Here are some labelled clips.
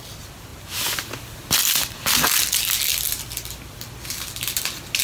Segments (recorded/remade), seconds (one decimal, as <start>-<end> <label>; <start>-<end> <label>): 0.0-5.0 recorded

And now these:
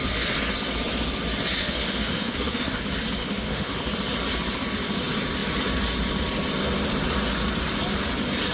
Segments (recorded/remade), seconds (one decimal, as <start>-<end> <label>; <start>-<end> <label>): 0.0-1.6 recorded; 1.6-2.8 remade; 2.8-3.2 recorded; 3.2-3.8 remade; 3.8-8.5 recorded

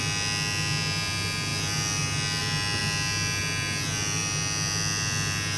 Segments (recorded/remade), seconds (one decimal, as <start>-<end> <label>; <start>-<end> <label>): 0.0-5.6 recorded

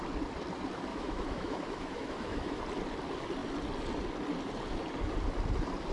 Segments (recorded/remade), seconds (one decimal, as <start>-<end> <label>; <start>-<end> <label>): 0.0-0.9 recorded; 0.9-2.6 remade; 2.6-5.9 recorded

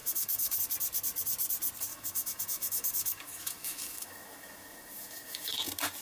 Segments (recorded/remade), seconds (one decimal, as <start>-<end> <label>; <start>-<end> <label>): 0.0-0.6 remade; 0.6-1.9 recorded; 1.9-5.5 remade; 5.5-6.0 recorded

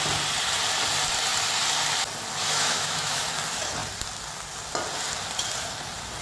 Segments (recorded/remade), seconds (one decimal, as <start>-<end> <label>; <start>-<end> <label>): 0.0-2.4 recorded; 2.4-3.3 remade; 3.3-6.2 recorded